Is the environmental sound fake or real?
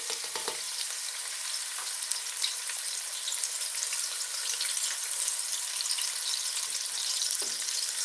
real